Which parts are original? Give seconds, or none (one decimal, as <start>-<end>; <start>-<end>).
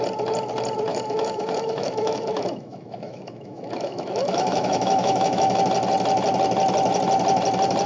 0.0-0.9; 5.6-7.9